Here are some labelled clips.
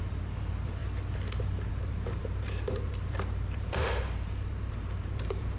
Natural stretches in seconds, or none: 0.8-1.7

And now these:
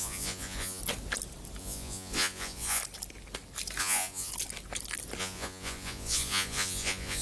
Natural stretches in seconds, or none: 0.8-1.6; 2.8-3.8; 4.3-5.2